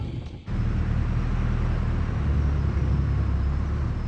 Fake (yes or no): no